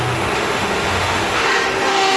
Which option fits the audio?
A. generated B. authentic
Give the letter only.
A